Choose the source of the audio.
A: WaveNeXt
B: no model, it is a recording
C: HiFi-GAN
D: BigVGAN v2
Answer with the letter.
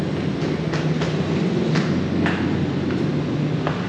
B